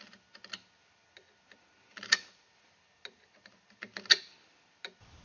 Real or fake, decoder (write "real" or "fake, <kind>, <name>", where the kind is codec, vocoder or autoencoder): real